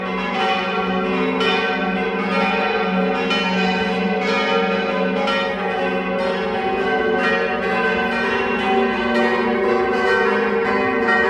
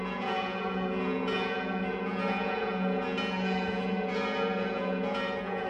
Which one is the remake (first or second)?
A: second